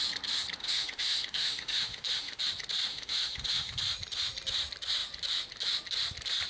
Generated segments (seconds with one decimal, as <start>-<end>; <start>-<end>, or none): 0.6-2.4; 2.9-3.8